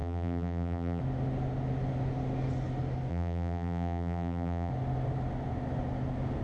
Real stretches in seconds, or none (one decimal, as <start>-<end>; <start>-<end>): 1.0-3.1; 4.7-6.4